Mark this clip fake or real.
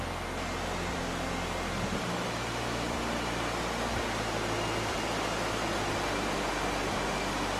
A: real